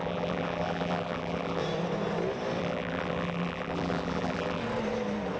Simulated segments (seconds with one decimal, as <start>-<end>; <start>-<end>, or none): 0.0-1.6; 2.6-4.6